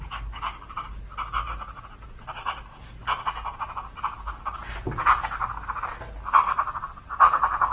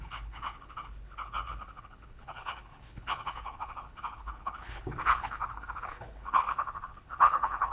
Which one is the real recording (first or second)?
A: first